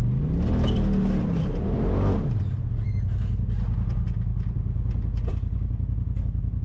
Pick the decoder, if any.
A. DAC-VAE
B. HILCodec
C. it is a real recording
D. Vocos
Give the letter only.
C